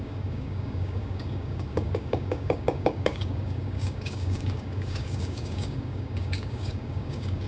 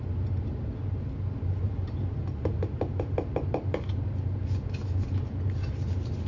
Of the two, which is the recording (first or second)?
second